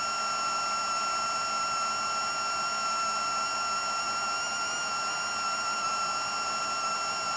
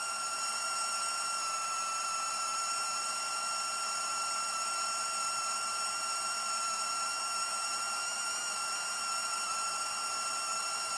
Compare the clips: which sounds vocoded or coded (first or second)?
second